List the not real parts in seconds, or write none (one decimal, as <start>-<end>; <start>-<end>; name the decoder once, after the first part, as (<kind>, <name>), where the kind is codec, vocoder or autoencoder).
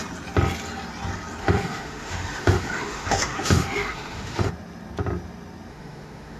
1.4-4.5 (autoencoder, DAC-VAE); 5.7-6.4